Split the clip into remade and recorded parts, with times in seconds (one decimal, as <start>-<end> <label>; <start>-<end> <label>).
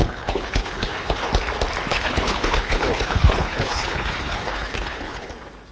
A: 0.0-1.3 remade; 1.3-1.9 recorded; 1.9-5.3 remade; 5.3-5.7 recorded